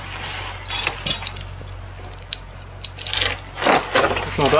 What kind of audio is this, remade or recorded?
recorded